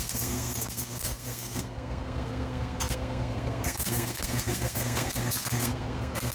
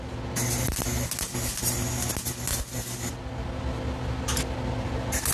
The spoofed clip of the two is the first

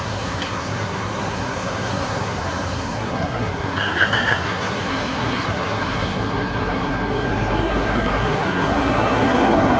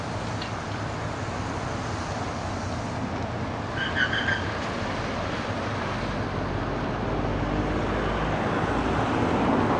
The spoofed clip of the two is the first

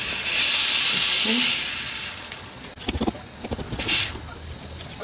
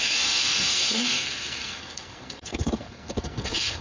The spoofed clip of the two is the second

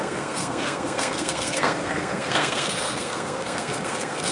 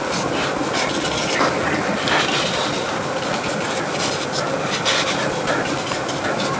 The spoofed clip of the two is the first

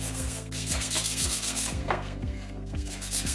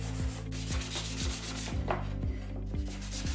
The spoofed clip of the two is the first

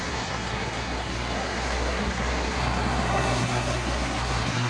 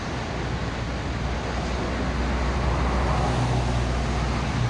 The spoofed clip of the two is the first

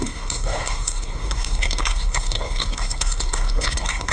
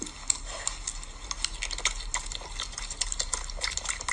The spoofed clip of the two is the first